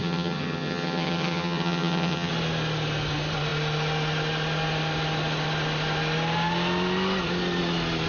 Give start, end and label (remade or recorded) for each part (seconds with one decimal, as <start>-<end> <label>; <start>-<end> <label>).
0.0-2.3 remade; 2.3-8.1 recorded